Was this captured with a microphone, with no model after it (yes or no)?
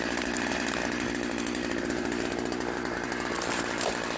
yes